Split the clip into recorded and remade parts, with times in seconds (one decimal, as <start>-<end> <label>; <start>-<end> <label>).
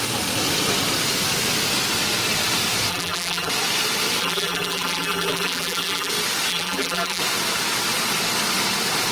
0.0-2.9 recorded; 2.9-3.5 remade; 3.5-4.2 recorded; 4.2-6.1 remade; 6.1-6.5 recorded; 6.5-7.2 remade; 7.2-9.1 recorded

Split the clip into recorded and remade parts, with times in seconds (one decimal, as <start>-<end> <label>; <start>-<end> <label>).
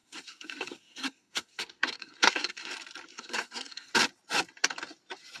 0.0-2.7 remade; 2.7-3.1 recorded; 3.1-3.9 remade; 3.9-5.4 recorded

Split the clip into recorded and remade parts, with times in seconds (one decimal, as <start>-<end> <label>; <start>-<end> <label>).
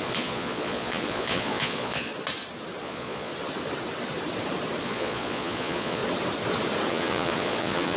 0.0-2.1 remade; 2.1-2.8 recorded; 2.8-3.3 remade; 3.3-4.8 recorded; 4.8-6.0 remade; 6.0-6.9 recorded; 6.9-8.0 remade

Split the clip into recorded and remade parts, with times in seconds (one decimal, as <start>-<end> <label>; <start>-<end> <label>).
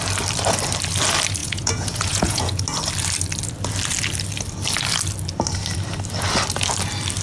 0.0-1.4 recorded; 1.4-2.6 remade; 2.6-7.2 recorded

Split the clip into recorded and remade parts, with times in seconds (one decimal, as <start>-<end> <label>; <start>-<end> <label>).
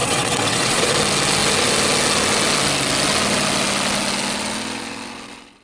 0.0-0.9 remade; 0.9-5.6 recorded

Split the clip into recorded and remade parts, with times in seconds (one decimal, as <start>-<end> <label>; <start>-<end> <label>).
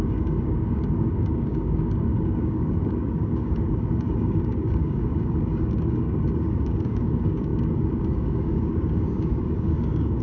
0.0-10.2 remade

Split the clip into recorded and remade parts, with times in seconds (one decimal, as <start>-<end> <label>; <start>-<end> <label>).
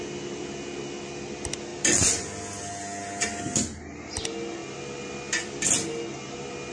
0.0-6.7 recorded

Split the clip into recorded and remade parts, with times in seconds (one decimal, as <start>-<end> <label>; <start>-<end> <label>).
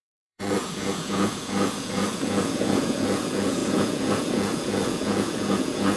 0.0-6.0 remade